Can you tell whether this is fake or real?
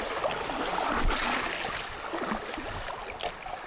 real